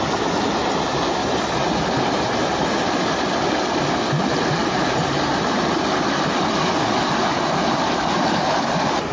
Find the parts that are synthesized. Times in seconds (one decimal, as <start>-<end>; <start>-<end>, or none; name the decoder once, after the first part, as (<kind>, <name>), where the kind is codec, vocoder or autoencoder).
none